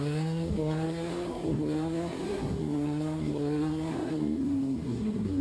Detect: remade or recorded remade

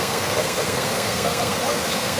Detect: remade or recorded remade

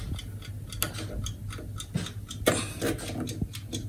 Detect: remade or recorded recorded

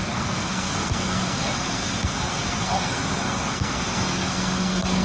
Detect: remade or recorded remade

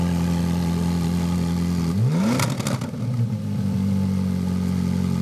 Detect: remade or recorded recorded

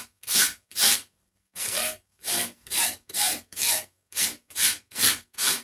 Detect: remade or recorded remade